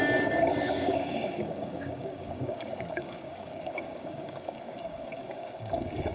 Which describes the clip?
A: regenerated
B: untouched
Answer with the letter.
A